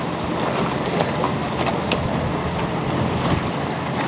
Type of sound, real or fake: real